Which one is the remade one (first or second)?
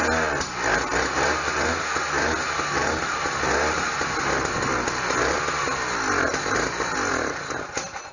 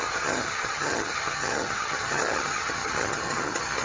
second